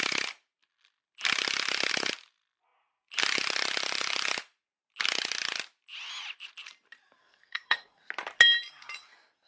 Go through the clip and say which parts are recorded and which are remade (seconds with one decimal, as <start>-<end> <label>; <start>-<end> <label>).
0.0-7.2 recorded; 7.2-8.0 remade; 8.0-9.5 recorded